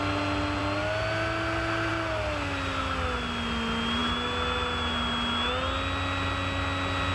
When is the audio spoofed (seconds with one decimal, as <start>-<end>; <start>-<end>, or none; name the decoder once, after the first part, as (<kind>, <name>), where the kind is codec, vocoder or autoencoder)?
none